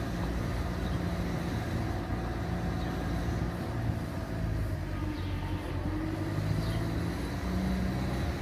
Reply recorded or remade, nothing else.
recorded